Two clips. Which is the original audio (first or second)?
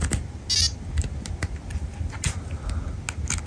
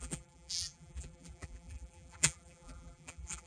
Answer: first